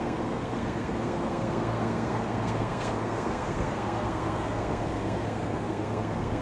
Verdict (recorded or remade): remade